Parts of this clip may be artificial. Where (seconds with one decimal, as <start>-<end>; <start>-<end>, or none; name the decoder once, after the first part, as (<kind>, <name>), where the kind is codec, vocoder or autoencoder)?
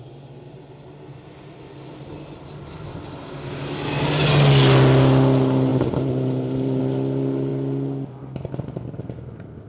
none